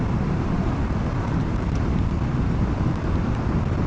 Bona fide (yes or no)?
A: no